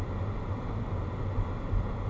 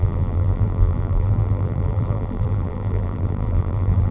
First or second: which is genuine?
first